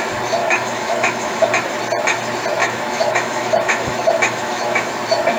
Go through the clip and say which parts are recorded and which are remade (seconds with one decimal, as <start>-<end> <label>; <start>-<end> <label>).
0.0-0.4 recorded; 0.4-1.5 remade; 1.5-2.6 recorded; 2.6-4.9 remade; 4.9-5.4 recorded